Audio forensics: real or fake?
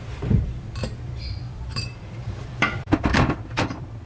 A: fake